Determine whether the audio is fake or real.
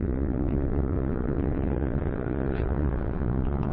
fake